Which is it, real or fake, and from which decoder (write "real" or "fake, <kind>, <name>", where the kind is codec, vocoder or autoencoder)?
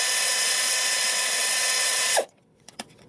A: fake, vocoder, WaveNeXt